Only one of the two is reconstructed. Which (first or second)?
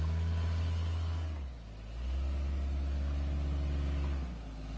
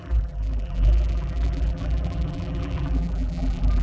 second